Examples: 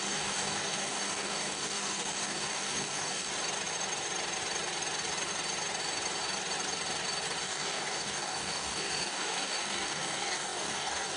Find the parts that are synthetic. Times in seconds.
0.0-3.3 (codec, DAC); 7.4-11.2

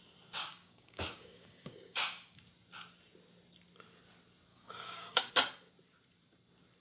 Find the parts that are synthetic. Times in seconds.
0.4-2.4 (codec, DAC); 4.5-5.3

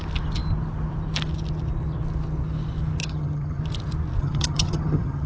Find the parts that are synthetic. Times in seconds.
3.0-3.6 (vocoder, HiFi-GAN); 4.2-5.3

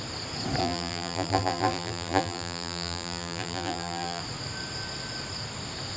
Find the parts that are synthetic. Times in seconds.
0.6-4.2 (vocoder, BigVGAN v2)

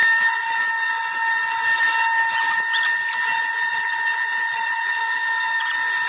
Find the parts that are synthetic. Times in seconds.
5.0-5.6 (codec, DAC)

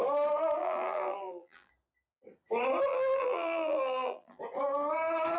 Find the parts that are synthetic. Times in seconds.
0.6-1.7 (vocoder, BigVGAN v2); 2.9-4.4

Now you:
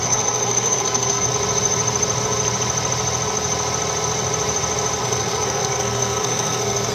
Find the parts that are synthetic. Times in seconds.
0.0-1.3 (codec, SNAC); 5.0-6.9